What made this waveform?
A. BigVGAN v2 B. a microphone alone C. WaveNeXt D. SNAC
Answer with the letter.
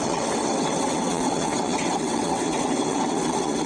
C